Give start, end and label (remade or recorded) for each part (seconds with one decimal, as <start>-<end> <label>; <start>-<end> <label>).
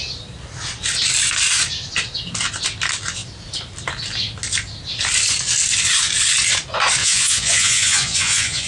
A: 0.0-7.0 recorded; 7.0-8.7 remade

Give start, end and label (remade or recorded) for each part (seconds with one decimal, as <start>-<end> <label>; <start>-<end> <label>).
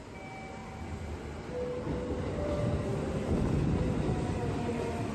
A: 0.0-5.1 recorded